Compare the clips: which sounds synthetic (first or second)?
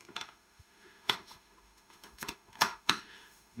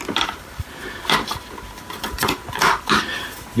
first